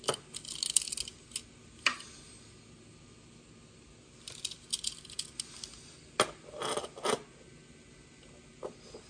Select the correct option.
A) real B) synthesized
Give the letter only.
A